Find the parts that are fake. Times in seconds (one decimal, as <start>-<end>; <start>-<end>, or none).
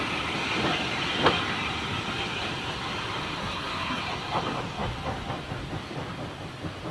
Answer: 3.4-4.0